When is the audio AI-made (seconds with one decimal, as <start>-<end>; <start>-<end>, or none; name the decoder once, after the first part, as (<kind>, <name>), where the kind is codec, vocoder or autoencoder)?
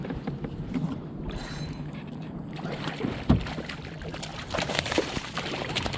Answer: 0.0-2.9 (vocoder, BigVGAN v2); 4.3-6.0